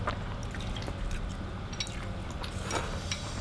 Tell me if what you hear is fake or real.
real